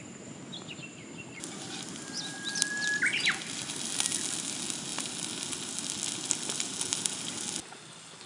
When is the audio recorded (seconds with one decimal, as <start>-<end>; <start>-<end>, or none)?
0.0-8.3